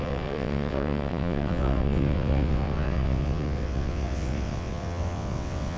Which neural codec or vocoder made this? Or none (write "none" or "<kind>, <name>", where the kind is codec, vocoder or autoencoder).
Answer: vocoder, WaveNeXt